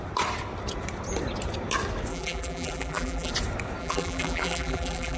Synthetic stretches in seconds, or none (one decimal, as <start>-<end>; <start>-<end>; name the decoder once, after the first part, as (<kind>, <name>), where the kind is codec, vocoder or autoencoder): 2.1-3.3 (vocoder, BigVGAN v2); 3.8-5.2